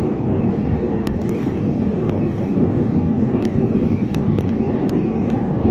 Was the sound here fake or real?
fake